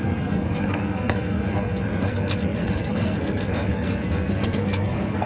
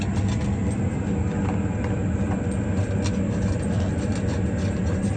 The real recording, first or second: second